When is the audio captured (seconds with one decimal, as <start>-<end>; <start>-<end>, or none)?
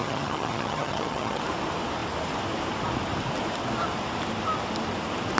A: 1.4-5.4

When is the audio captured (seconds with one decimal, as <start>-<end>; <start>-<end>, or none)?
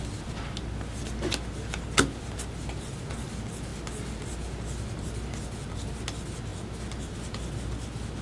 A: 0.0-8.2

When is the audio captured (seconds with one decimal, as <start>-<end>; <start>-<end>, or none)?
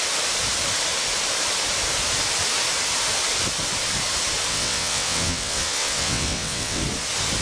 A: 0.0-4.5; 6.8-7.4